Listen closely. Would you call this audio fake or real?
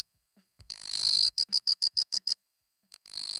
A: fake